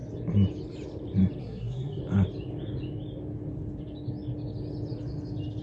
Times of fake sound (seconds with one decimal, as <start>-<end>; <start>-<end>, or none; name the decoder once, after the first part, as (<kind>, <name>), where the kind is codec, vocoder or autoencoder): 1.4-2.0 (codec, SNAC)